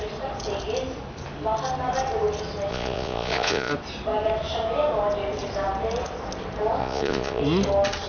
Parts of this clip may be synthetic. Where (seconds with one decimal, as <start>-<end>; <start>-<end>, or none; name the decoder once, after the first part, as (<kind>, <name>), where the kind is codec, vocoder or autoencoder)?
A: 2.7-3.7 (vocoder, Vocos); 6.8-7.4